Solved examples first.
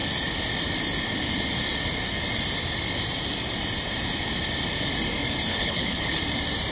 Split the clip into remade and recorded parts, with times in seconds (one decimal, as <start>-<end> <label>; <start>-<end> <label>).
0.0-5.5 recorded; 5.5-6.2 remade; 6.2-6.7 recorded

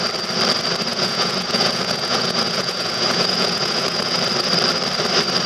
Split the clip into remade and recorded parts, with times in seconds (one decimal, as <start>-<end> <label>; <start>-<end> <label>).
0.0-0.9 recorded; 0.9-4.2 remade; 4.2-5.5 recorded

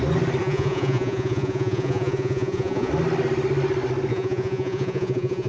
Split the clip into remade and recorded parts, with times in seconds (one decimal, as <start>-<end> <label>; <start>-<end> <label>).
0.0-0.4 recorded; 0.4-2.9 remade; 2.9-4.1 recorded; 4.1-5.5 remade